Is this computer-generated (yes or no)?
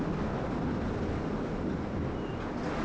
no